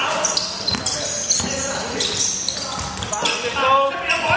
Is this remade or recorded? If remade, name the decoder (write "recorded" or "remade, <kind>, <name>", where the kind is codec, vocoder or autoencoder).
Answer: recorded